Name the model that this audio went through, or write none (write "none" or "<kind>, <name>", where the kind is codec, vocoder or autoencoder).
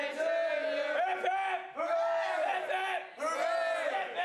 none